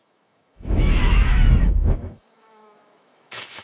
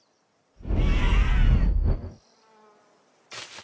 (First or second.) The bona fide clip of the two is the second